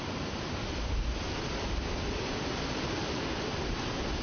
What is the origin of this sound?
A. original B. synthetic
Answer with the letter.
A